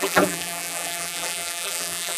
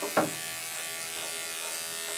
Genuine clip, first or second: second